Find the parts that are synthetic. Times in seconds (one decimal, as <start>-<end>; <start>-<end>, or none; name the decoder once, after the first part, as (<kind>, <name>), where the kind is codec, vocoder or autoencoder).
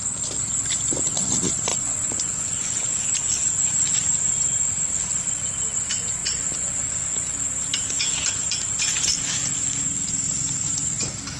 1.7-2.8 (vocoder, Vocos); 6.2-7.3